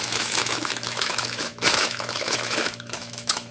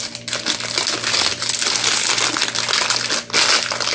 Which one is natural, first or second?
second